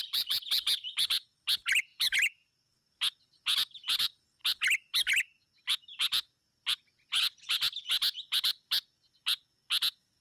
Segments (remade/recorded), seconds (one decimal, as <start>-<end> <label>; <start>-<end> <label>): 0.0-4.4 remade; 4.4-5.6 recorded; 5.6-7.7 remade; 7.7-8.3 recorded; 8.3-10.2 remade